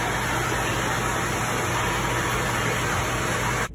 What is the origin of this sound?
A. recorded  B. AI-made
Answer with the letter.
A